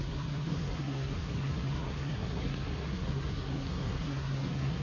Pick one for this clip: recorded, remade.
remade